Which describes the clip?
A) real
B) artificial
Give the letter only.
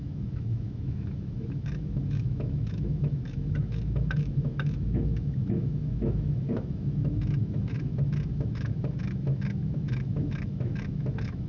B